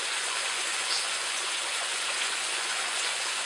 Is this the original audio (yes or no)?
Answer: no